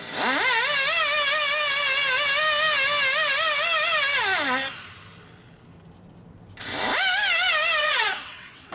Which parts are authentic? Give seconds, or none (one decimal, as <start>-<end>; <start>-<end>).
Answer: 0.0-7.8